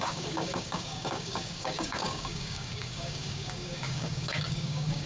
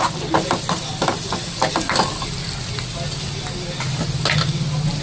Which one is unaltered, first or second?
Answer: second